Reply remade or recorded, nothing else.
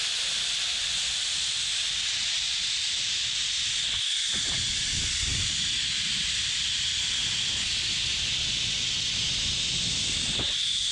recorded